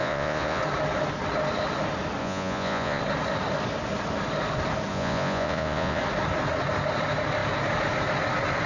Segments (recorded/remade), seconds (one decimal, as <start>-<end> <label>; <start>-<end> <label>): 0.0-0.6 remade; 0.6-2.2 recorded; 2.2-3.0 remade; 3.0-4.9 recorded; 4.9-6.0 remade; 6.0-8.7 recorded